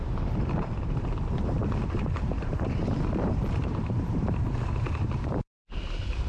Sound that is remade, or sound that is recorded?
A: remade